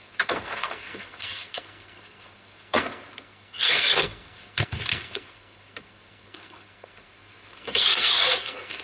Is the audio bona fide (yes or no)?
no